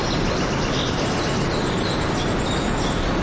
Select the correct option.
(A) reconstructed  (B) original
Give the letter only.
B